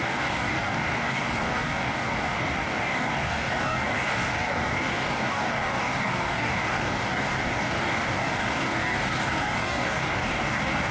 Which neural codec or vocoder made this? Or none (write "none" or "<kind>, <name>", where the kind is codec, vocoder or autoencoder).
codec, DAC